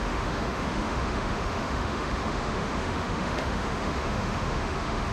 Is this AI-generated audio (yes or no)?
yes